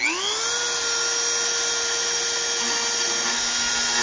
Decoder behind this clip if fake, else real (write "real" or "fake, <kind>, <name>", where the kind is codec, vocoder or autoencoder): real